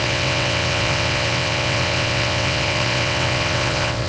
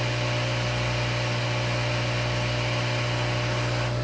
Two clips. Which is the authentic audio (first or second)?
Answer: second